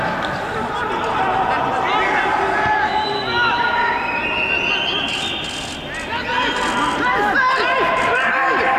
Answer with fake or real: real